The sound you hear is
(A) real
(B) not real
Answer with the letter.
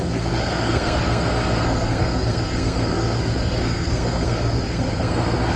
B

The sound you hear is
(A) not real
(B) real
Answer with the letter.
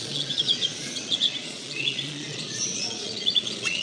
A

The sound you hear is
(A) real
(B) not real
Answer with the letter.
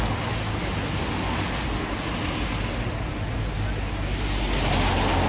A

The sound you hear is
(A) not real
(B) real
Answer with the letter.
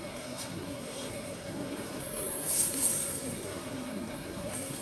A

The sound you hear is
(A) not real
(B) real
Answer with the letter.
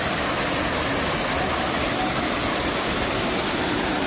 B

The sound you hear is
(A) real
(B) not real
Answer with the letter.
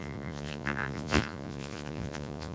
B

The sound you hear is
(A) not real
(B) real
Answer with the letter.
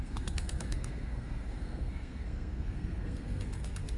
A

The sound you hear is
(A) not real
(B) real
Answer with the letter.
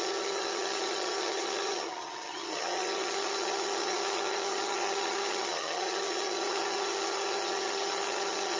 A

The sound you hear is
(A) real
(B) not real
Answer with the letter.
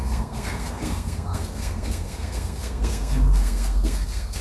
B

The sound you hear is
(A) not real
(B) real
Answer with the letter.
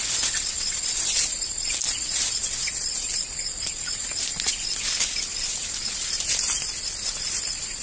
B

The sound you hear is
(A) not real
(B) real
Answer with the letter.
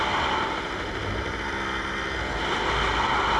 B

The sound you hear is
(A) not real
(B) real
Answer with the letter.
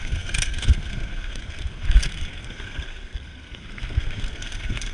A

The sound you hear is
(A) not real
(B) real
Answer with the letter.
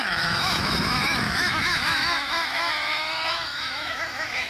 A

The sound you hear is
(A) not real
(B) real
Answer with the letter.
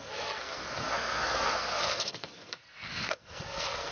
A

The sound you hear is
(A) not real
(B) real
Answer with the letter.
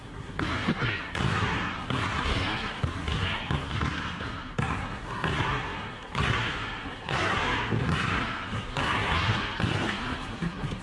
A